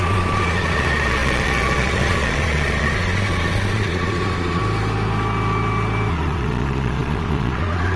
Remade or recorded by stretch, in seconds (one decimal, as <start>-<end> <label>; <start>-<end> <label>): 0.0-4.6 remade; 4.6-6.1 recorded; 6.1-8.0 remade